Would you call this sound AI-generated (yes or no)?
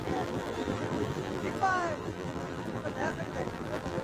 yes